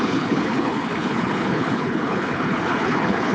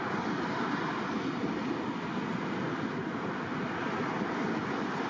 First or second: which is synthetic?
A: first